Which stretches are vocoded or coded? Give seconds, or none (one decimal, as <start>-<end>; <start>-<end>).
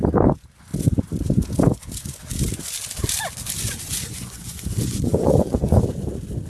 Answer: 3.9-5.8